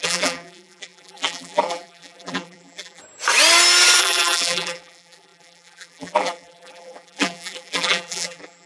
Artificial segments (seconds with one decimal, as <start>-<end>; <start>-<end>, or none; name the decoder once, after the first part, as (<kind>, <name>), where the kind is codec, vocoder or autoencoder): 0.0-3.0 (vocoder, BigVGAN v2); 4.0-8.7